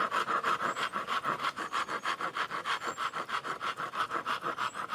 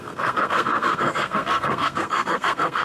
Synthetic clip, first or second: second